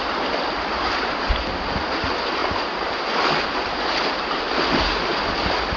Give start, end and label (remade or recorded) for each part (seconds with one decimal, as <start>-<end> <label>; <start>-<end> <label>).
0.0-5.8 recorded